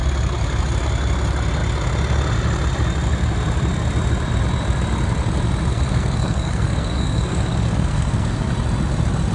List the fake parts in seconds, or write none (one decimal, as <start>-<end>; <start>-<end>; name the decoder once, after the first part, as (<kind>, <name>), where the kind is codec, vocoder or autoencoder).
5.7-8.5 (codec, SNAC)